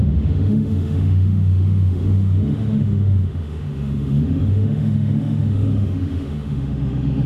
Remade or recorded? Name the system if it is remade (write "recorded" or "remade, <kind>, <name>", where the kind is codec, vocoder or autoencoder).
remade, autoencoder, DAC-VAE